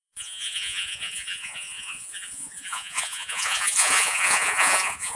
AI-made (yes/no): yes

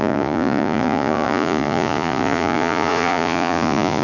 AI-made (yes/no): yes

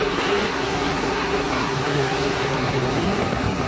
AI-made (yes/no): yes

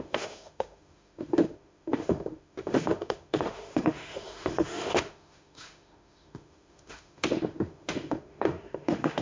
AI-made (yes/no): yes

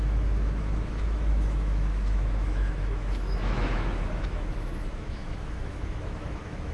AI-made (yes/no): yes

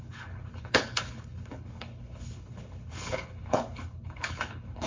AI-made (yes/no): yes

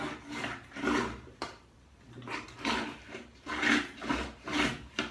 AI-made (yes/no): yes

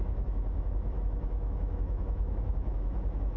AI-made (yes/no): yes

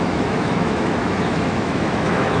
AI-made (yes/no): yes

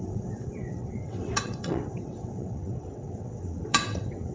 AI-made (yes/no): yes